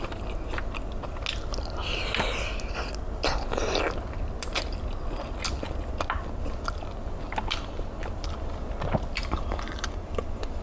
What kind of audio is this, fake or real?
real